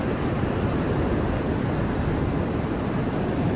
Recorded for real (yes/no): yes